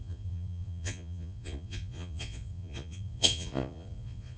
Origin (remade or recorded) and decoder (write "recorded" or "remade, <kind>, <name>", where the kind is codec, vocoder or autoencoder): remade, vocoder, Vocos